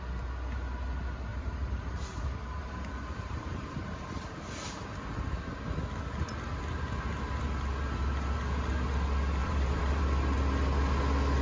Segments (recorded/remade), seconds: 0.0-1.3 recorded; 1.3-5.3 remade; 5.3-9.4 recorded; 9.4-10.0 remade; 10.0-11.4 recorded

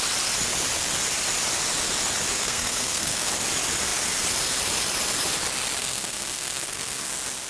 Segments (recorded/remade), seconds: 0.0-2.3 recorded; 2.3-3.3 remade; 3.3-5.8 recorded; 5.8-7.1 remade; 7.1-7.5 recorded

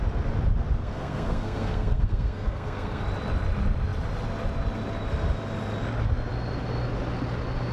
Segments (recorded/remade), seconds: 0.0-0.8 recorded; 0.8-3.0 remade; 3.0-7.7 recorded

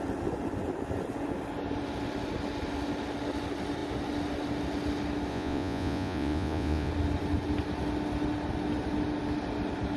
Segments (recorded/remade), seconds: 0.0-5.3 recorded; 5.3-6.9 remade; 6.9-10.0 recorded

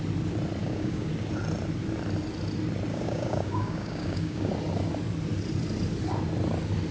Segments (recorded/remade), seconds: 0.0-0.6 recorded; 0.6-1.1 remade; 1.1-2.9 recorded; 2.9-4.5 remade; 4.5-6.9 recorded

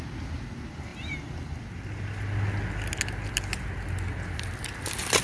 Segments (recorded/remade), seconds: 0.0-5.2 recorded

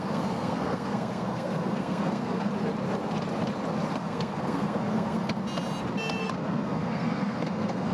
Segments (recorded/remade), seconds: 0.0-2.5 remade; 2.5-3.9 recorded; 3.9-5.4 remade; 5.4-6.2 recorded; 6.2-7.9 remade

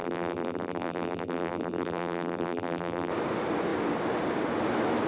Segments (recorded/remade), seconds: 0.0-3.1 remade; 3.1-5.1 recorded